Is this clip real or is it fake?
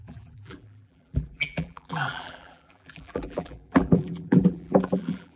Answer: fake